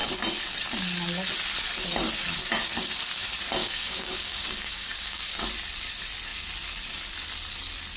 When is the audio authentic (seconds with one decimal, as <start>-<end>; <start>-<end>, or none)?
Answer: 0.0-3.6; 5.4-8.0